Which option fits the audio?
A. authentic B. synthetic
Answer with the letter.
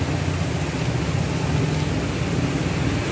A